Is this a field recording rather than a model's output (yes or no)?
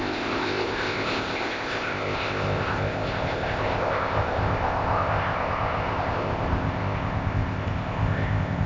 no